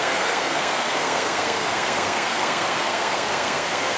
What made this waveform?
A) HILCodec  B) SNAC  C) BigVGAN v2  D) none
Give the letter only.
B